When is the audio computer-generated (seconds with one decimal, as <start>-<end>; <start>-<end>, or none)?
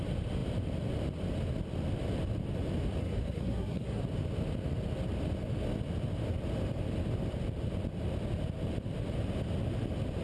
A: 3.0-4.0